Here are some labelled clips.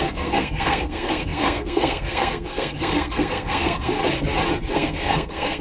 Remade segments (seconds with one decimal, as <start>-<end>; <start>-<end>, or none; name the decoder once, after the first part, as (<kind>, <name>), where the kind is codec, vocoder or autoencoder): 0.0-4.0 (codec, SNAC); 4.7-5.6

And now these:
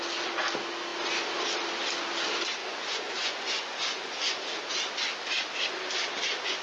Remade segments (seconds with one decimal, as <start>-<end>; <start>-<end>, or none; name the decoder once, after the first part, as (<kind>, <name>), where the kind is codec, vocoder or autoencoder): 2.6-4.6 (vocoder, Vocos)

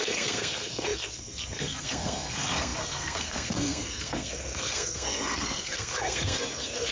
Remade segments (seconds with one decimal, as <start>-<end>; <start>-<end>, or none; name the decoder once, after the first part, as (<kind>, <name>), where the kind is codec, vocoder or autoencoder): 0.0-6.9 (codec, SNAC)

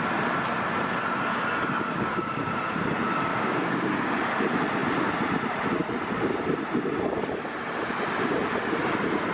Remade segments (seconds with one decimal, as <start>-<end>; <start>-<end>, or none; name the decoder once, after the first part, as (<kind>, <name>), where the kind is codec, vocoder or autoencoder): 1.3-2.4 (codec, DAC); 3.3-3.9

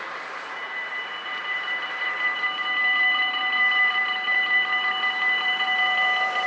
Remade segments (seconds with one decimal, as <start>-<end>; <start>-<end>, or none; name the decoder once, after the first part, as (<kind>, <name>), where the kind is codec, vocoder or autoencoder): 0.0-6.5 (vocoder, BigVGAN v2)

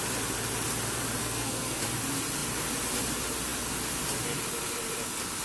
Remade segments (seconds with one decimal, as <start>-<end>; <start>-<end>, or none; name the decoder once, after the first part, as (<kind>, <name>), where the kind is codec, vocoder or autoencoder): 1.2-1.8 (codec, SNAC)